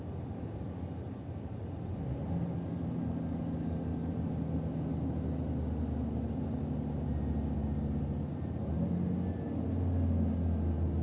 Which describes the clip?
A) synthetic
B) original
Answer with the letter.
B